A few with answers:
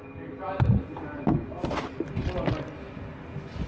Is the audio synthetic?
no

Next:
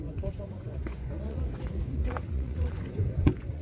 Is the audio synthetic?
yes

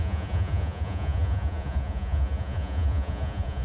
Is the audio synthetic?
yes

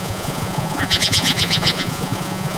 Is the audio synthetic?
yes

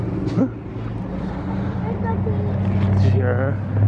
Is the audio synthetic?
no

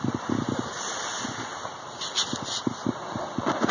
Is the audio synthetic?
no